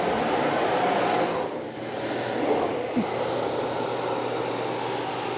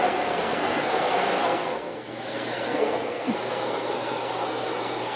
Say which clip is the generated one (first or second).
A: second